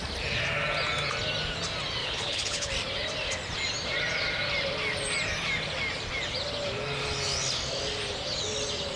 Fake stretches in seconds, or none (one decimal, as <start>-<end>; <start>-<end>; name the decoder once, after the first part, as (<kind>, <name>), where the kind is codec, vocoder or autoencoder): 2.0-2.7 (codec, HILCodec)